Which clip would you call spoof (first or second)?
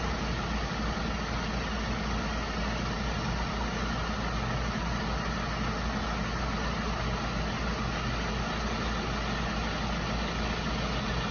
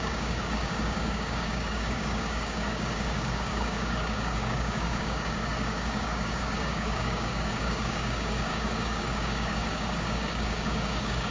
second